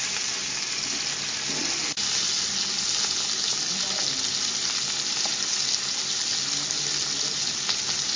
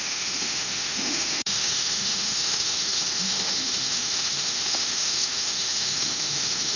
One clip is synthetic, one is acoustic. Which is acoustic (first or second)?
first